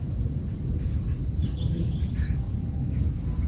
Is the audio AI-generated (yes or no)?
no